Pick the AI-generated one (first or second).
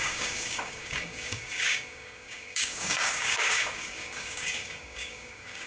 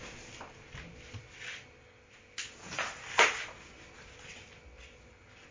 first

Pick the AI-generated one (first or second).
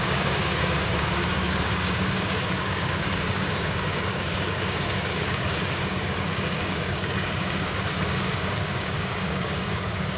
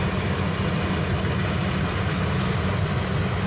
first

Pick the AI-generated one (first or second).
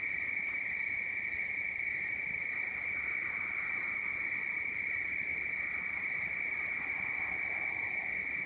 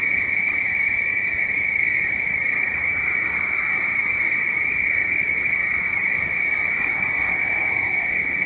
second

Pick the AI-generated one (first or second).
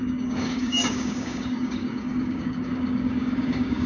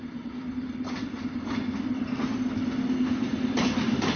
first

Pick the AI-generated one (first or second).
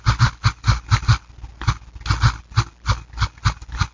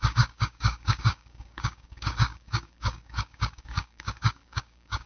second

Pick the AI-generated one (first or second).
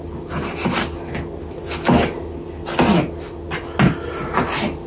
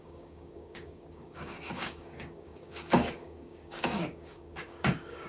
second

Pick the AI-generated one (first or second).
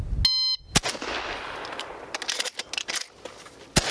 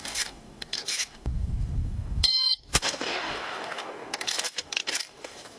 second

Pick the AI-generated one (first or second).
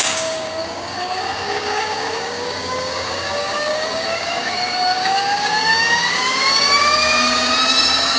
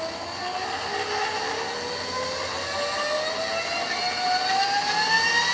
first